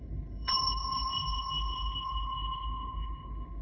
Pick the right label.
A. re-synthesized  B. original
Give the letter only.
A